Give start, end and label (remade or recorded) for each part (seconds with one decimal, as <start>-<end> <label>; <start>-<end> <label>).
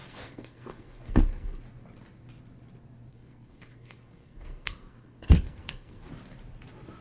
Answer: 0.0-1.6 remade; 1.6-3.1 recorded; 3.1-6.1 remade; 6.1-7.0 recorded